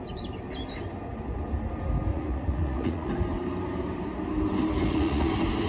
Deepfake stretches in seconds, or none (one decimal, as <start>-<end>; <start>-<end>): 2.1-3.1; 4.8-5.3